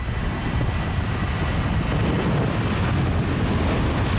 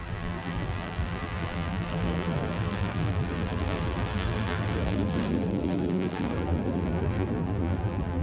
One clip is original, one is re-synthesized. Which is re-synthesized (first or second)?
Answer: second